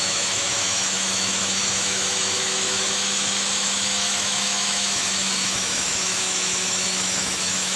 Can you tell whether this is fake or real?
fake